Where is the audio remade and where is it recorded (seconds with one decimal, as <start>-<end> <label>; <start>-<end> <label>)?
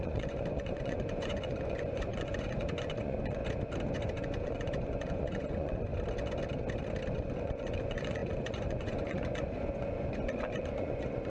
0.0-3.4 remade; 3.4-3.9 recorded; 3.9-5.9 remade; 5.9-7.1 recorded; 7.1-11.3 remade